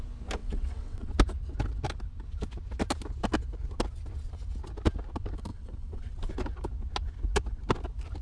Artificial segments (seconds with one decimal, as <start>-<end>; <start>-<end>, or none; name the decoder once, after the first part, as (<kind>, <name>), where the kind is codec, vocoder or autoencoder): 0.4-1.1 (vocoder, WaveNeXt); 5.5-6.1